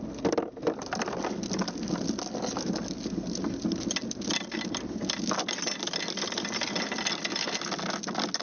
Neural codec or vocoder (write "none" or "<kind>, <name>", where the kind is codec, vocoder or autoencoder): none